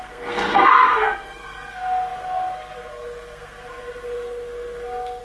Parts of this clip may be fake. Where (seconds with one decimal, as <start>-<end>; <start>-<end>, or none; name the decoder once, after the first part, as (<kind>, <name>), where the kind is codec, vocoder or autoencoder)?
0.0-5.2 (codec, SNAC)